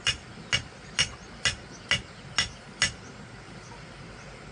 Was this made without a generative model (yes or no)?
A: yes